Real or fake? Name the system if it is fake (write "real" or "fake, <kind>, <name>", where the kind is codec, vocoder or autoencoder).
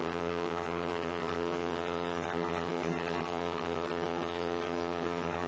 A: fake, vocoder, HiFi-GAN